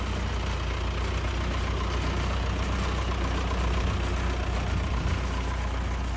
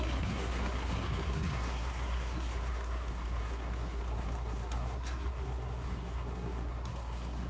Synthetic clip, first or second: second